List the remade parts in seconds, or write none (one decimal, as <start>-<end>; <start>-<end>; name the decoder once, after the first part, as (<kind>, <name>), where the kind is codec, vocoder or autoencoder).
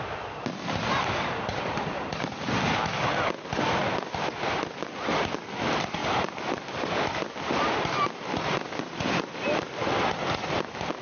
none